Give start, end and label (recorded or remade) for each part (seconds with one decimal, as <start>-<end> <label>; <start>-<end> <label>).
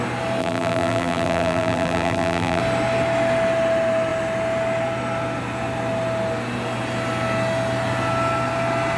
0.0-0.4 recorded; 0.4-2.6 remade; 2.6-9.0 recorded